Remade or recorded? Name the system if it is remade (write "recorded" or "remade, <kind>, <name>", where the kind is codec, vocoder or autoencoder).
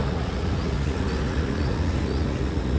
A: remade, vocoder, Vocos